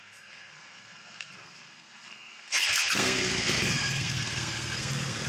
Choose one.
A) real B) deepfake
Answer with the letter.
B